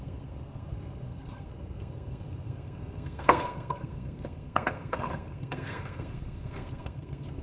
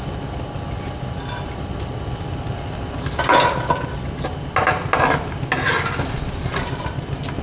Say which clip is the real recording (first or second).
second